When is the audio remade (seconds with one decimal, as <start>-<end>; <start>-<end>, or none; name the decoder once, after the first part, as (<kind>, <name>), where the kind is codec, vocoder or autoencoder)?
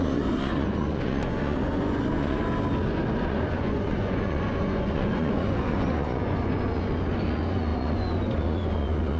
0.0-2.4 (vocoder, Vocos); 3.2-9.2